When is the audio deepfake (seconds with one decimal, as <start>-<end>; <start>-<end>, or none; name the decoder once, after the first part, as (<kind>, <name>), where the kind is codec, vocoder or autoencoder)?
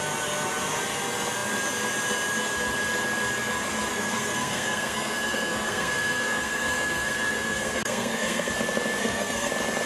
3.9-8.5 (codec, SNAC); 9.0-9.5